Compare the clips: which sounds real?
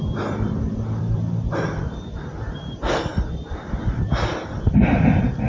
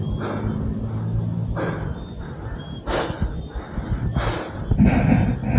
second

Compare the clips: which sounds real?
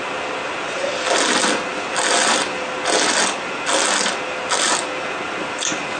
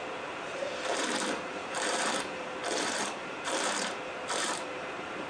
first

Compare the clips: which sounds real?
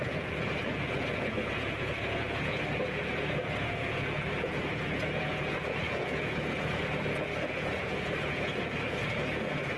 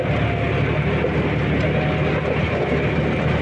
second